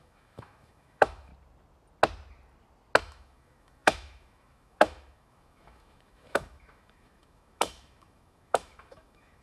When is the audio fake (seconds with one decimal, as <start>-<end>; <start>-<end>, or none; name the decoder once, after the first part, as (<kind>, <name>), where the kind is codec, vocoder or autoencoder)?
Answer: 0.0-1.3 (autoencoder, DAC-VAE); 3.0-9.4